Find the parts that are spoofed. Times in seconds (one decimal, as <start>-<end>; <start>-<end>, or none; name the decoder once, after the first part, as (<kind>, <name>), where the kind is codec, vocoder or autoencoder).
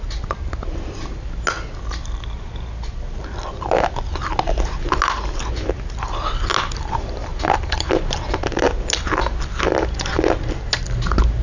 none